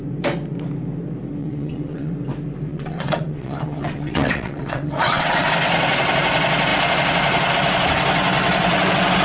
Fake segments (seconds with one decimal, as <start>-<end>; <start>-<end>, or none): 1.4-2.1; 2.7-5.5